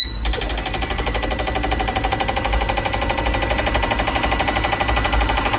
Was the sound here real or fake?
real